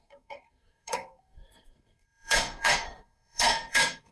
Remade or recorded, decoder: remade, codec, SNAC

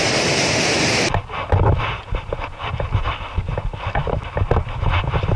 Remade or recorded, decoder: recorded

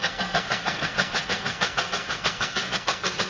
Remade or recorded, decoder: remade, codec, SNAC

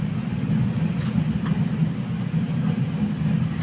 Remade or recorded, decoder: recorded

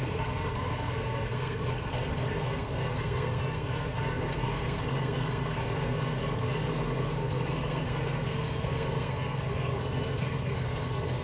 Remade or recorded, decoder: remade, codec, SNAC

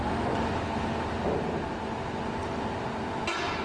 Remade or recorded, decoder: recorded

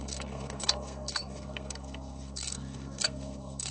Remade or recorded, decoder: remade, codec, SNAC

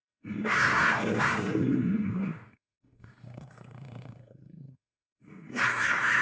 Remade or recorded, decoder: remade, codec, SNAC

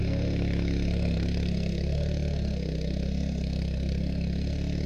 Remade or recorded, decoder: remade, codec, SNAC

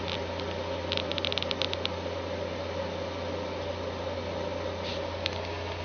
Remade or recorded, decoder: recorded